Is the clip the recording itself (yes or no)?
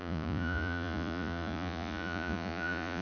no